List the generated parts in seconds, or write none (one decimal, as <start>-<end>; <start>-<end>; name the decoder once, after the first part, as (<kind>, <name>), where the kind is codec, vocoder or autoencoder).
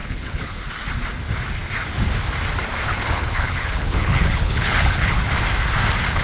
0.0-0.6 (codec, HILCodec); 2.9-5.3